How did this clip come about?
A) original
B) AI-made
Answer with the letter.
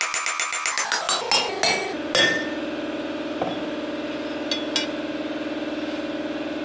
A